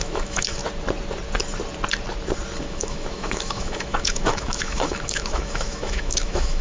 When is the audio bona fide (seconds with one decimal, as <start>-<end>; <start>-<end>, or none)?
0.6-2.6